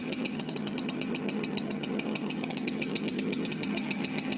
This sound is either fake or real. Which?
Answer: fake